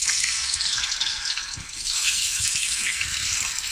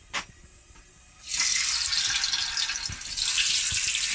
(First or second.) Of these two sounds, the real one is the second